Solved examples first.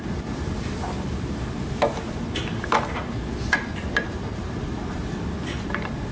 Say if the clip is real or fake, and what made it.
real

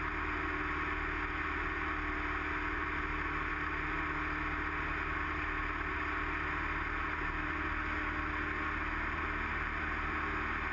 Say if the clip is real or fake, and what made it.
real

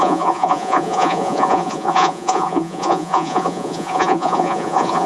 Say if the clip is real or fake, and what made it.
fake, vocoder, Vocos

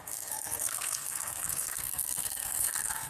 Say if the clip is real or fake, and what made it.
fake, codec, SNAC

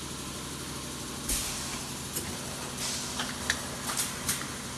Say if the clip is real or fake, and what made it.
real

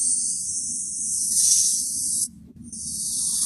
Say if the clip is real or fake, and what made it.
real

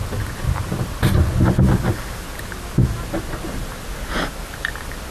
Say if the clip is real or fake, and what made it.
real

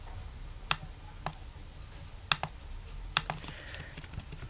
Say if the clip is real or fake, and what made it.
real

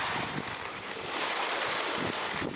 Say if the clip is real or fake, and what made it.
real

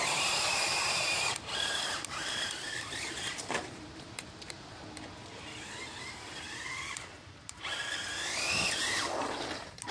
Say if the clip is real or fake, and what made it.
fake, vocoder, BigVGAN v2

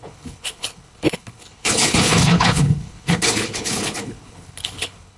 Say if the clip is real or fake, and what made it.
fake, codec, HILCodec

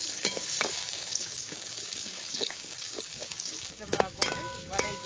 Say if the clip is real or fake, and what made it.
fake, codec, DAC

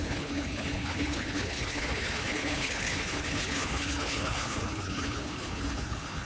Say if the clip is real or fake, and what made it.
fake, codec, HILCodec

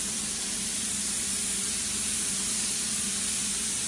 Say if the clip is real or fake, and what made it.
real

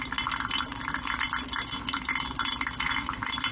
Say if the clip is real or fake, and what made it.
real